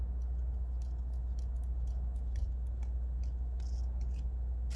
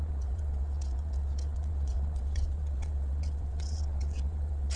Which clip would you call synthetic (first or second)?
second